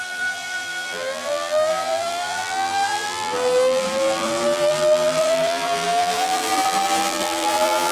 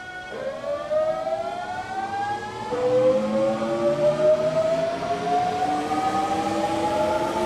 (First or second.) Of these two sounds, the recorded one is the second